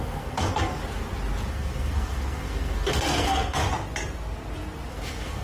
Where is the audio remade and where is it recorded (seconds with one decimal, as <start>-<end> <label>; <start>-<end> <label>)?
0.0-0.8 remade; 0.8-1.5 recorded; 1.5-3.6 remade; 3.6-4.9 recorded; 4.9-5.4 remade